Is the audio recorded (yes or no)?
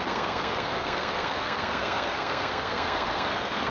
no